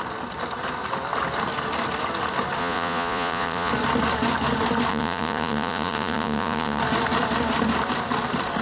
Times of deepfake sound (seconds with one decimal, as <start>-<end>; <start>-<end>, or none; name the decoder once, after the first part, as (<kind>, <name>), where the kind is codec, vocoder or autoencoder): 2.6-3.7 (vocoder, Vocos); 4.9-6.8